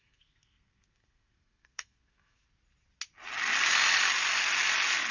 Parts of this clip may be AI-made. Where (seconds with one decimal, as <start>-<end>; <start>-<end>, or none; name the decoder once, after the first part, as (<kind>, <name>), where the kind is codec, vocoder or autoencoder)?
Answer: 0.0-2.4 (codec, SNAC)